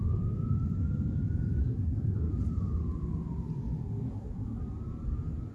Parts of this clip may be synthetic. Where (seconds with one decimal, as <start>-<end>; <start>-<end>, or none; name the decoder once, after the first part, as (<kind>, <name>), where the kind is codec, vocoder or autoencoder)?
1.6-2.3 (codec, SNAC); 3.8-4.6